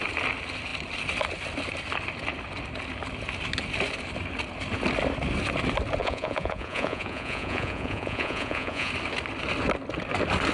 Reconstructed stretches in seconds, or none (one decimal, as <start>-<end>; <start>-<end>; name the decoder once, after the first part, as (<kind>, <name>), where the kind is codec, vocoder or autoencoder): 6.0-8.9 (vocoder, Vocos)